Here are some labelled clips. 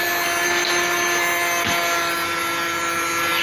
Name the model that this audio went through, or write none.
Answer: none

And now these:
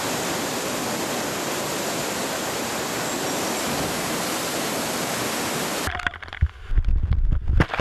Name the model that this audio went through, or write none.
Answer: none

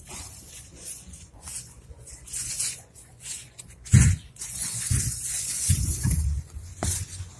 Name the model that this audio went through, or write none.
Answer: vocoder, Vocos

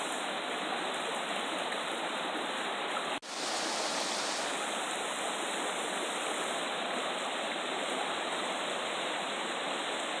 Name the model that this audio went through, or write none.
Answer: none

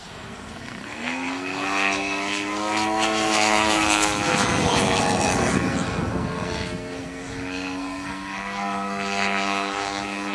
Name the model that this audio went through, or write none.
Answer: codec, SNAC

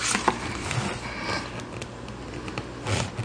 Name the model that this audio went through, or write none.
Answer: none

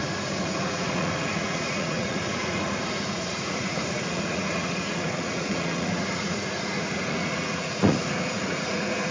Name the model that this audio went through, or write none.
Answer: vocoder, Vocos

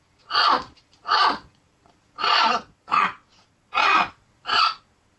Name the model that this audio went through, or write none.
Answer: vocoder, Vocos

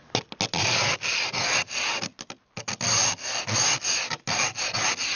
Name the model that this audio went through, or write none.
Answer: none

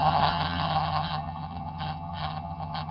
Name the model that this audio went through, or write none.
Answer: vocoder, HiFi-GAN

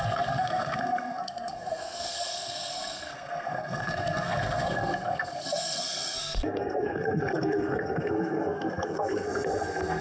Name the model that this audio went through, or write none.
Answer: codec, SNAC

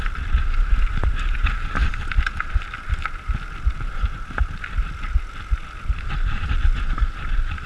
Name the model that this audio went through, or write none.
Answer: none